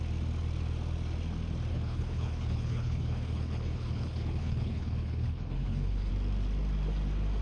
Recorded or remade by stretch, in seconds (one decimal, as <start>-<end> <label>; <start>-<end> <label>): 0.0-1.7 recorded; 1.7-6.1 remade; 6.1-7.4 recorded